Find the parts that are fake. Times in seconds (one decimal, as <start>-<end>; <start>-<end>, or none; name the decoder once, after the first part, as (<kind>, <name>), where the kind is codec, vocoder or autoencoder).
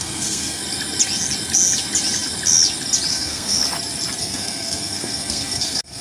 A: 0.0-0.6 (codec, SNAC); 3.1-3.6; 4.2-6.0